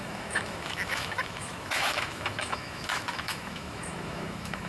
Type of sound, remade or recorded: remade